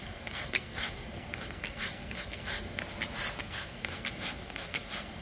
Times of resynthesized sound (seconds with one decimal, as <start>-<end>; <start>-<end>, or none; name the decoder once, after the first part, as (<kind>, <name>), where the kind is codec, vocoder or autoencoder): 0.0-2.8 (codec, SNAC); 3.4-5.2